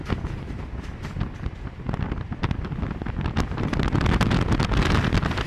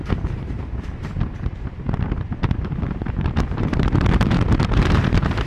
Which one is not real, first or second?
second